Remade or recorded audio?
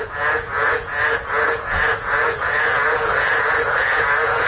remade